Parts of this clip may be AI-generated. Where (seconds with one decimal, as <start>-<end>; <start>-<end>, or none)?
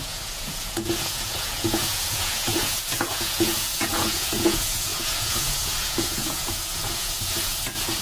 0.0-8.0